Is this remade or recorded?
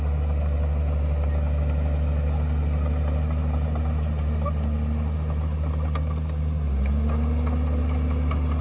recorded